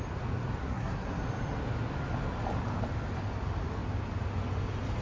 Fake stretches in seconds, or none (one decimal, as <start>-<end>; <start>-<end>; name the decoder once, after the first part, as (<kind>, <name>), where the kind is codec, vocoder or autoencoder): 0.6-1.2 (codec, SNAC)